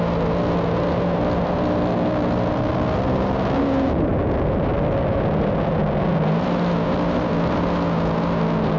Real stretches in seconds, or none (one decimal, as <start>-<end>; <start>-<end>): 0.0-8.8